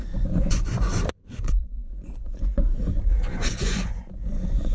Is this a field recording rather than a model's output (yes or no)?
no